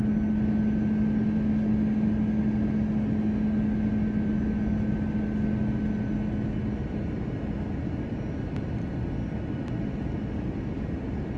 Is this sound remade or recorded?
recorded